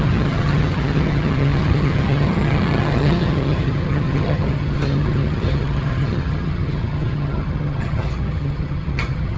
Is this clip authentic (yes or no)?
no